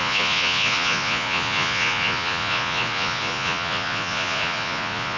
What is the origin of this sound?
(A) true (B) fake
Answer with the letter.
B